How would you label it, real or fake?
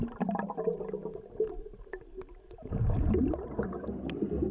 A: real